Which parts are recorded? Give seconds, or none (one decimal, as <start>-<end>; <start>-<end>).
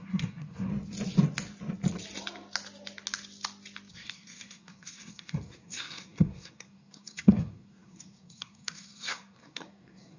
0.7-3.9